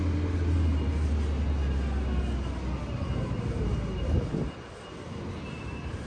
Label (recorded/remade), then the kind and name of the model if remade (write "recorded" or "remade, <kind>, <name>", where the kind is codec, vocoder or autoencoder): recorded